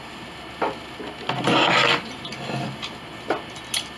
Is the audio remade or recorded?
recorded